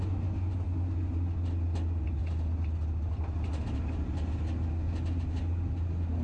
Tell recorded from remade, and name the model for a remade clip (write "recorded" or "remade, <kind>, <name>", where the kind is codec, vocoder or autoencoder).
recorded